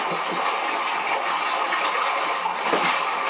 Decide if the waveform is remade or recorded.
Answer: recorded